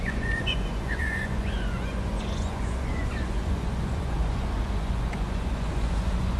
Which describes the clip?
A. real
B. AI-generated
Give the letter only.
B